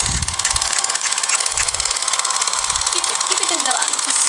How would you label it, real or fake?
fake